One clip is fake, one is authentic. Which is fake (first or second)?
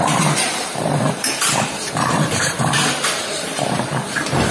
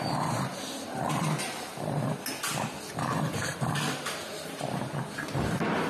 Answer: first